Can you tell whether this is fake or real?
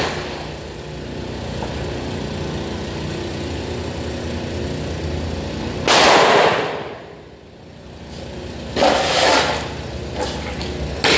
real